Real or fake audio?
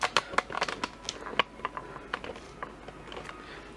real